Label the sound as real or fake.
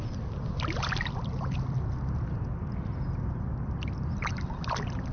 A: real